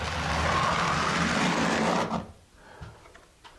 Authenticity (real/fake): real